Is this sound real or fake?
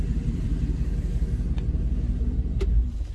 fake